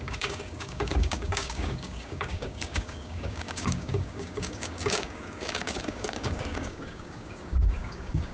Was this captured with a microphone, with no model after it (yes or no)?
no